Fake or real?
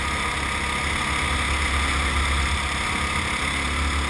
real